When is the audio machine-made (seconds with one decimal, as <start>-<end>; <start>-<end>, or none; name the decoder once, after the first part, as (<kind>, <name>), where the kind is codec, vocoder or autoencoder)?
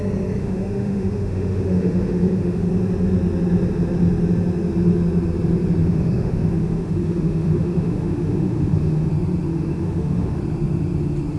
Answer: 0.4-2.7 (autoencoder, DAC-VAE); 5.8-9.1; 9.5-10.4